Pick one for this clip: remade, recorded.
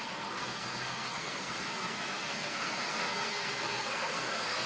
remade